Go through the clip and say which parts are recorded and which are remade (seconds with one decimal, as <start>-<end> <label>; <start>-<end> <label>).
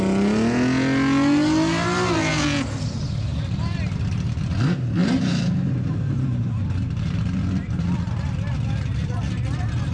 0.0-5.0 recorded; 5.0-9.3 remade; 9.3-9.9 recorded